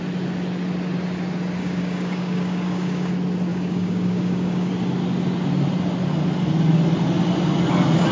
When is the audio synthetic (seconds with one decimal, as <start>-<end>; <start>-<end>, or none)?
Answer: 1.6-3.1; 3.5-4.7